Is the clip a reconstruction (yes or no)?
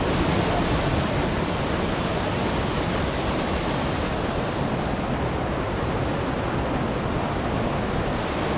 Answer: no